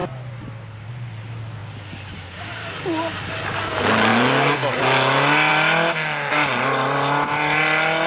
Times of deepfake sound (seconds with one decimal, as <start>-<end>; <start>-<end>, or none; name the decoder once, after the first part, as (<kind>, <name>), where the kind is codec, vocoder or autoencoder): none